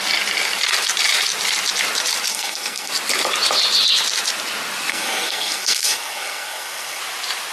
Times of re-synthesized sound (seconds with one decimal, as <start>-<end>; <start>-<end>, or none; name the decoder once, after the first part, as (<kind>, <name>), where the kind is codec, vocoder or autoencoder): 2.3-2.9 (codec, SNAC); 4.9-7.0